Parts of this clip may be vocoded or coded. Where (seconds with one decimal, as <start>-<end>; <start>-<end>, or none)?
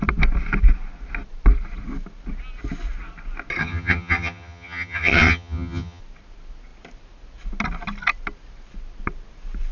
3.6-6.0